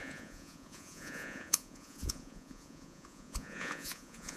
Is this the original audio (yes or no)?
no